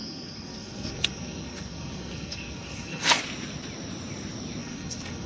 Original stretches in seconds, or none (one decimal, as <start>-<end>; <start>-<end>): 3.2-4.6